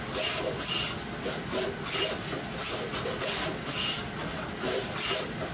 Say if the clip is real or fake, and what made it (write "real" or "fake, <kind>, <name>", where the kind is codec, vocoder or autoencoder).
real